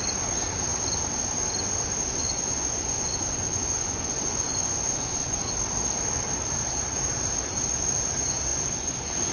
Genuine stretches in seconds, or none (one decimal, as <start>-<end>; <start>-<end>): 0.0-2.2; 5.4-8.5